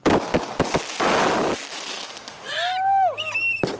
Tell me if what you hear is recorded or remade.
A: recorded